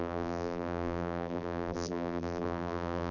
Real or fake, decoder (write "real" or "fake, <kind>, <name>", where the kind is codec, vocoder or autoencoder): fake, vocoder, BigVGAN v2